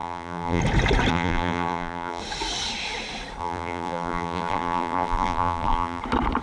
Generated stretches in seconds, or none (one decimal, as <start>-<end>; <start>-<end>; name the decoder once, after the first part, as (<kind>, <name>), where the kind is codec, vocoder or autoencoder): 0.0-0.6 (vocoder, BigVGAN v2); 1.1-2.2; 3.4-6.0